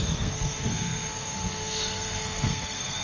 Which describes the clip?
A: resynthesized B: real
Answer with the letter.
A